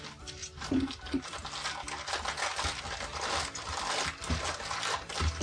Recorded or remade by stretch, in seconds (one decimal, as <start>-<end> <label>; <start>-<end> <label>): 0.0-5.4 recorded